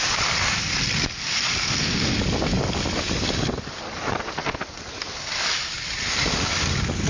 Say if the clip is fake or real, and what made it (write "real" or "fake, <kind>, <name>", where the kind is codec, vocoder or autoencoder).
real